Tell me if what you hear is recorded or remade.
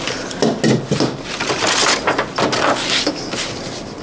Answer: recorded